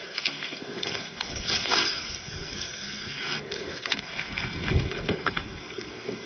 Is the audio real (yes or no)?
no